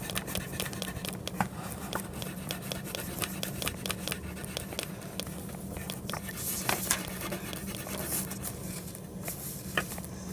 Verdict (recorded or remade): recorded